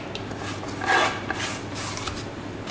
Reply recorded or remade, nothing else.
recorded